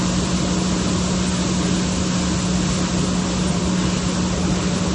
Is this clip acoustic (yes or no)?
yes